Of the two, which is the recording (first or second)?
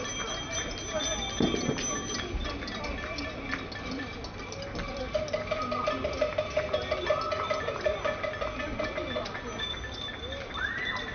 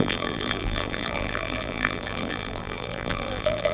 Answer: first